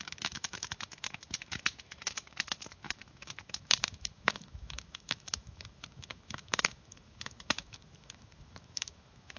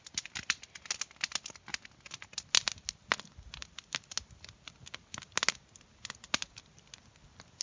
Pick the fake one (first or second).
first